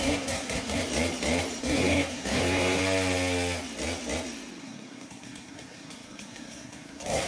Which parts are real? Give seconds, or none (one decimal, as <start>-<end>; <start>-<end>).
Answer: 0.8-1.6; 2.8-4.6